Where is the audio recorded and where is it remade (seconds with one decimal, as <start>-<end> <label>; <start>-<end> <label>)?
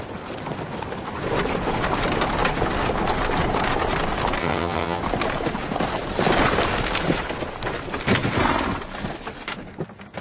0.0-4.4 recorded; 4.4-5.0 remade; 5.0-10.2 recorded